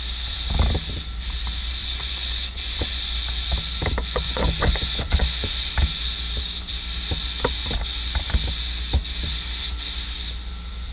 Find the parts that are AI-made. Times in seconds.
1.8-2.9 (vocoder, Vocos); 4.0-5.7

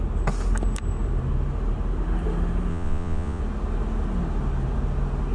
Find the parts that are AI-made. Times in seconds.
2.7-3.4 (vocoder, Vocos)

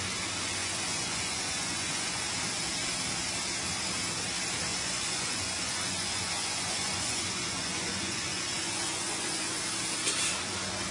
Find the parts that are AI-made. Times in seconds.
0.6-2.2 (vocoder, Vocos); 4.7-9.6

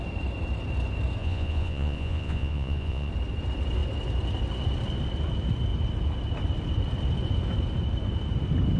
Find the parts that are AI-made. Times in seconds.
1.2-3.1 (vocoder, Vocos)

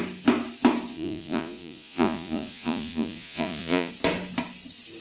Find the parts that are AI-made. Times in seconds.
0.9-3.9 (vocoder, Vocos)

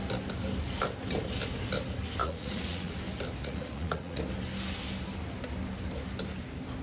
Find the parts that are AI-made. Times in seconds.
2.2-2.9 (vocoder, Vocos); 3.4-4.2

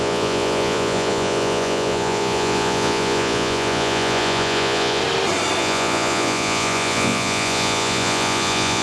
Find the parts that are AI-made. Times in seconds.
0.0-5.0 (vocoder, Vocos); 5.6-8.8

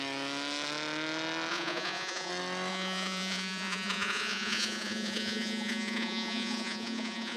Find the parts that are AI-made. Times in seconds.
1.5-2.3 (vocoder, Vocos); 2.7-7.4